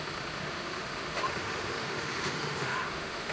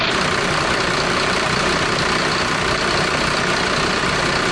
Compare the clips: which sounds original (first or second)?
second